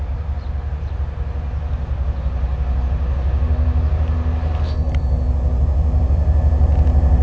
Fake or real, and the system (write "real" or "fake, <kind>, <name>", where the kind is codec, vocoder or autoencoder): real